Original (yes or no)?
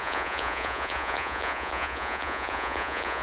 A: no